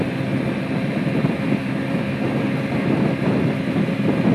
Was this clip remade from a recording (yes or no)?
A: no